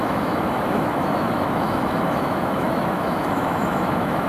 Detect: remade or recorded remade